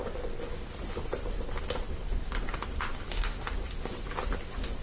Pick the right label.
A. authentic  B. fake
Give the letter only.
A